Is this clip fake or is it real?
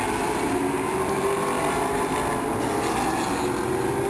real